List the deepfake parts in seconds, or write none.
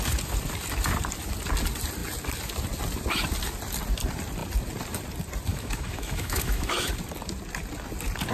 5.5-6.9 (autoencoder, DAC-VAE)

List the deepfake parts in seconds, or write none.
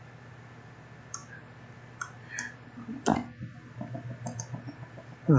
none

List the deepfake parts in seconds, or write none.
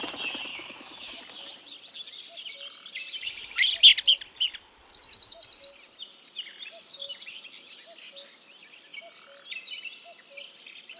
0.5-1.2 (autoencoder, DAC-VAE)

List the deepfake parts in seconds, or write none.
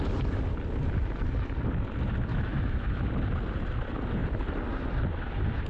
2.3-3.1 (autoencoder, DAC-VAE)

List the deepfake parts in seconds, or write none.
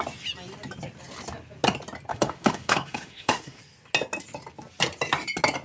2.1-3.6 (autoencoder, DAC-VAE)